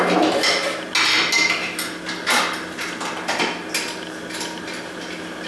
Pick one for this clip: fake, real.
real